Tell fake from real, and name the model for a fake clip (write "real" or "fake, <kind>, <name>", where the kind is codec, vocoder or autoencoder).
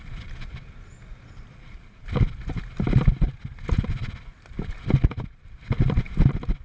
real